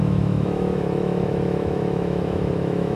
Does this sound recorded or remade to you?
remade